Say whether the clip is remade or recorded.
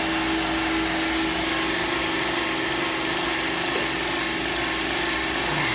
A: recorded